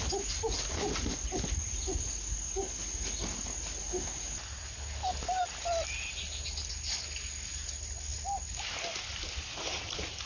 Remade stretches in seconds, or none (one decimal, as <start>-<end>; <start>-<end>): none